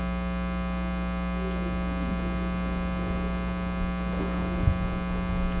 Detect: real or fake real